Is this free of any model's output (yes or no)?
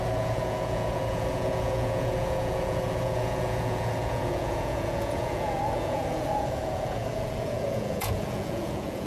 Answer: no